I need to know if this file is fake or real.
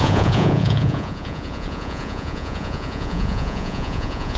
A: fake